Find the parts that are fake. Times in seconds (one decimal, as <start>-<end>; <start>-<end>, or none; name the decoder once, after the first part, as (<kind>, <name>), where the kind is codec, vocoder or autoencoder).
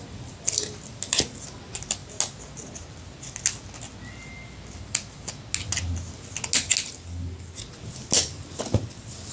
none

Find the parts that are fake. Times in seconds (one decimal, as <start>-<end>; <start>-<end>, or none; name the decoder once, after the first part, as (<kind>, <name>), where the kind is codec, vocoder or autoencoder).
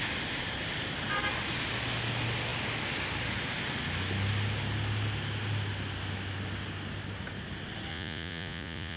7.9-9.0 (vocoder, Vocos)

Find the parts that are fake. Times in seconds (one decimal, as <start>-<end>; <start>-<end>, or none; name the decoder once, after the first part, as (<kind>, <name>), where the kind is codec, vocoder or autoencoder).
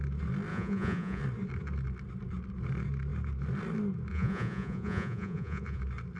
0.5-1.2 (vocoder, Vocos); 4.1-5.8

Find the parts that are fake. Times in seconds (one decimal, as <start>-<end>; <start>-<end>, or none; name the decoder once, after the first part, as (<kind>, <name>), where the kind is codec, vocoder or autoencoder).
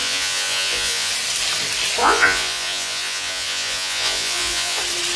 0.0-1.1 (vocoder, Vocos); 2.0-4.8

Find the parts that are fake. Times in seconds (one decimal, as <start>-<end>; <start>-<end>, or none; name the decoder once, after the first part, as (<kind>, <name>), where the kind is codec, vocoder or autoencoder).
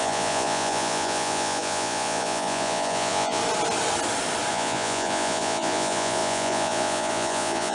0.0-3.4 (vocoder, Vocos); 4.5-7.7